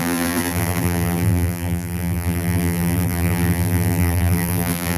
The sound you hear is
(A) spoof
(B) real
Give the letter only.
A